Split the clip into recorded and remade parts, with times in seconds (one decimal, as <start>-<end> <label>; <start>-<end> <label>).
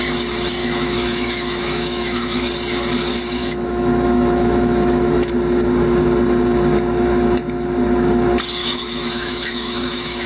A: 0.0-0.6 recorded; 0.6-2.5 remade; 2.5-3.4 recorded; 3.4-5.3 remade; 5.3-8.6 recorded; 8.6-10.3 remade